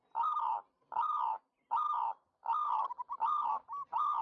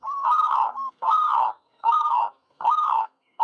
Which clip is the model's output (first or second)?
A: second